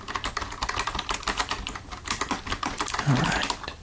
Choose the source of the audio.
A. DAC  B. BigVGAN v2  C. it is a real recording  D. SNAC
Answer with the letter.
C